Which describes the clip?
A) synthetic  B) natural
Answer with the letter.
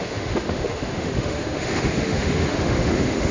A